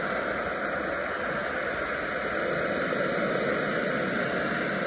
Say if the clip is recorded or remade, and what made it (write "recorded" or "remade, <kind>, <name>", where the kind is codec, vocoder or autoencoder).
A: recorded